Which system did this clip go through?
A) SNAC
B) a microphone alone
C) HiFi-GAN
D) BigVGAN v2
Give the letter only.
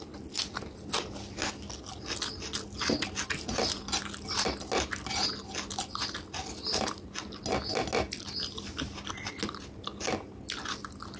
B